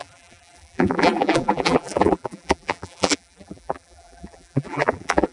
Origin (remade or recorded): remade